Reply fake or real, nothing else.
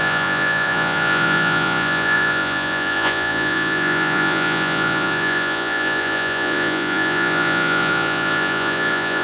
fake